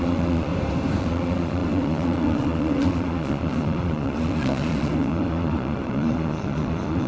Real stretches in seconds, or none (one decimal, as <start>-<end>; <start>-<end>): 0.5-1.0